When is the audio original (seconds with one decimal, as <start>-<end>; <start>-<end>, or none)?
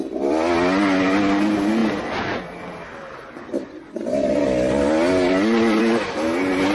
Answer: 0.0-6.7